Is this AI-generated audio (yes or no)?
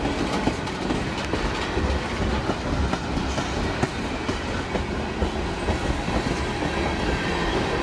no